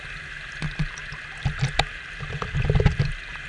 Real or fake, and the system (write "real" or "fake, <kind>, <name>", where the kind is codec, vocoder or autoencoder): real